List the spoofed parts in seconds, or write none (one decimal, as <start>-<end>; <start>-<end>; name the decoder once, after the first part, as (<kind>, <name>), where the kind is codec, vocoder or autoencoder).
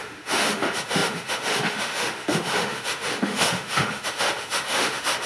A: 0.0-5.3 (autoencoder, DAC-VAE)